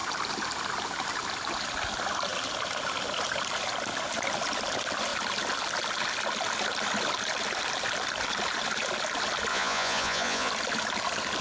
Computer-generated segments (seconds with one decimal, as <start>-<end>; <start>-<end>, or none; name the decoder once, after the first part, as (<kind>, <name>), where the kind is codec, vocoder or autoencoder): 9.5-10.5 (vocoder, Vocos)